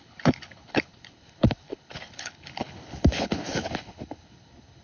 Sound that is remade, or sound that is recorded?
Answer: remade